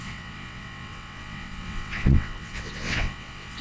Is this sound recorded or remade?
remade